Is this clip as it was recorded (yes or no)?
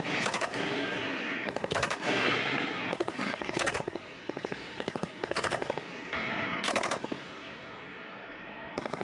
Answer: no